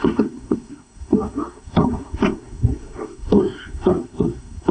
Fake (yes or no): yes